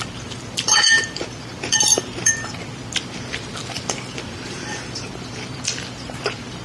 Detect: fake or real fake